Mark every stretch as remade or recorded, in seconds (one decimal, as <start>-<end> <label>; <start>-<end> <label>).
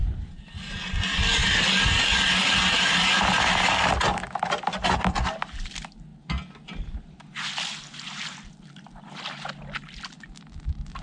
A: 0.0-11.0 recorded